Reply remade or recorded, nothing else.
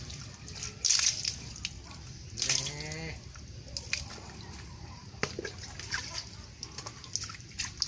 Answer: recorded